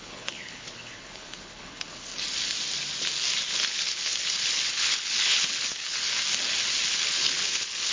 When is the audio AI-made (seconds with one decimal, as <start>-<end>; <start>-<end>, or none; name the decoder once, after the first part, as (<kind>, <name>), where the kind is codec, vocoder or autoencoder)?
0.0-2.1 (codec, HILCodec); 3.5-6.1; 6.9-7.9